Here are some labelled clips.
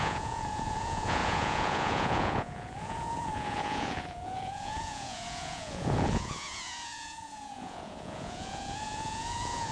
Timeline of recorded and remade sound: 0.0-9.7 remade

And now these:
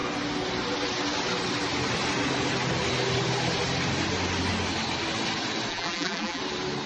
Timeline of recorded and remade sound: 0.0-5.7 recorded; 5.7-6.4 remade; 6.4-6.9 recorded

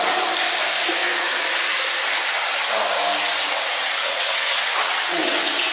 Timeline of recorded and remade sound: 0.0-3.4 recorded; 3.4-5.7 remade

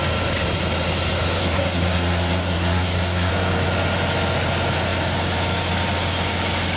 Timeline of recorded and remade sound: 0.0-1.4 recorded; 1.4-3.3 remade; 3.3-6.8 recorded

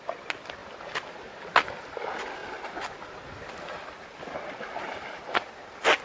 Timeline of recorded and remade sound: 0.0-6.0 recorded

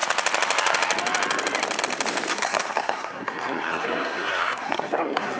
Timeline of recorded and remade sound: 0.0-2.3 recorded; 2.3-5.4 remade

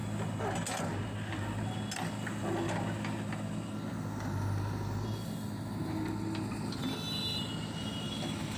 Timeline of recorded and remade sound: 0.0-8.6 recorded

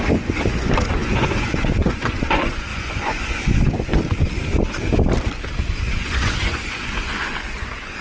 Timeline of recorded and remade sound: 0.0-4.0 remade; 4.0-5.7 recorded; 5.7-8.0 remade